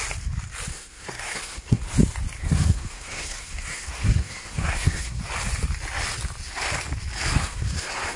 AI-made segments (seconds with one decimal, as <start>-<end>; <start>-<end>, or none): 0.7-1.8; 2.4-5.2; 7.4-8.2